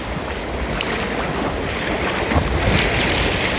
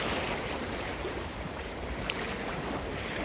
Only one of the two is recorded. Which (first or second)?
first